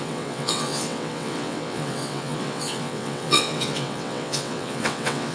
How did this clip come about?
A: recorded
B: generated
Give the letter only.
B